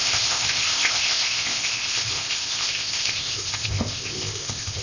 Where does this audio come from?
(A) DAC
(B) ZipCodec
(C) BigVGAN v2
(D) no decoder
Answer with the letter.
B